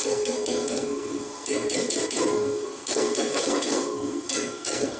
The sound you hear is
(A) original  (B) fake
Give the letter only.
B